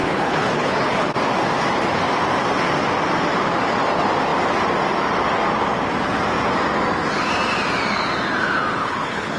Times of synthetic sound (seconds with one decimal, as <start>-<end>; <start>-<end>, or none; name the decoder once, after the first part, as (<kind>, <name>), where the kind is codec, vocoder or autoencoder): 0.0-1.1 (codec, HILCodec); 8.8-9.4